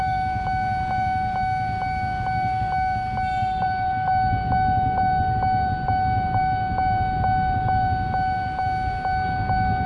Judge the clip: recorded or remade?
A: recorded